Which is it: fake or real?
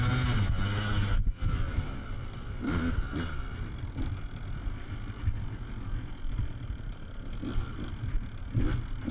real